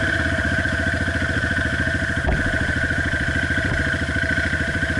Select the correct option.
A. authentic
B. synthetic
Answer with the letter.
B